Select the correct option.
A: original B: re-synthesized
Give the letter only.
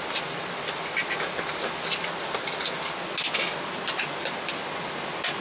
A